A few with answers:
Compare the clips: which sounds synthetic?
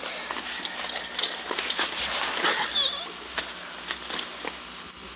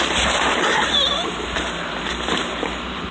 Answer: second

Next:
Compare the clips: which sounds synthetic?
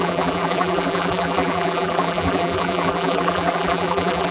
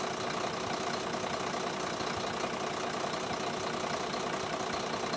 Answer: first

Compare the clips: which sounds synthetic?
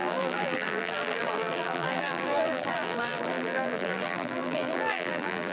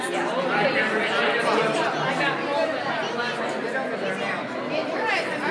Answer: first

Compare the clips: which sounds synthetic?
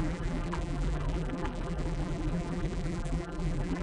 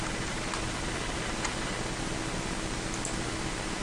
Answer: first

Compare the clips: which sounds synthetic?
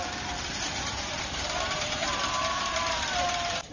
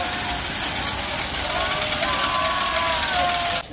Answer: first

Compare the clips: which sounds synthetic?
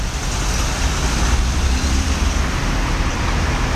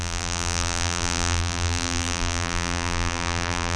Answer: second